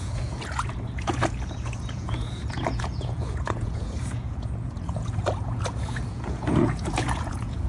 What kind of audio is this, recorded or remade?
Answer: remade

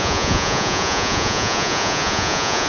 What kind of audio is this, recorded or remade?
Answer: remade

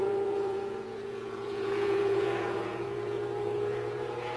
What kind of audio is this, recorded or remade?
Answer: remade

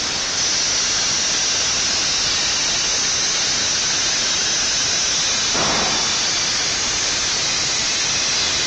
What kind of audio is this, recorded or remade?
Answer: recorded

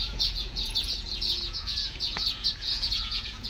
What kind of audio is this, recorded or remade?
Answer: remade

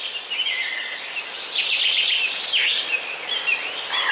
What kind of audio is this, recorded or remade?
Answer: recorded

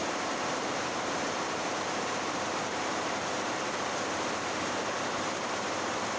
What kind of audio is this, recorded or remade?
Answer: recorded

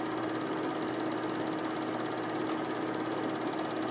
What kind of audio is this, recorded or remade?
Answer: recorded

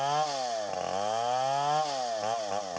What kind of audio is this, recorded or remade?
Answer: recorded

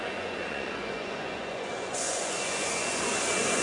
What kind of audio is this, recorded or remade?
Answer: remade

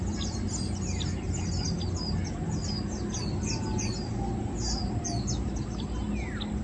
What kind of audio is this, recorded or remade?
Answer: recorded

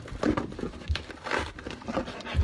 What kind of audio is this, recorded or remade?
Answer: recorded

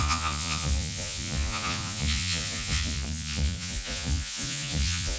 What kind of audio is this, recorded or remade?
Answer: remade